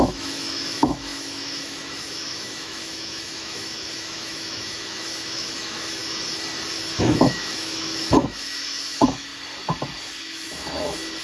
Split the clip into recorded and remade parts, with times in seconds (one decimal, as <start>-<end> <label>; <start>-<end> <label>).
0.0-6.0 remade; 6.0-7.0 recorded; 7.0-9.3 remade; 9.3-10.2 recorded; 10.2-11.2 remade